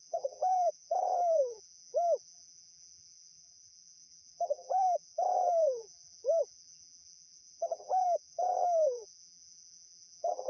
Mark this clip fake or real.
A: fake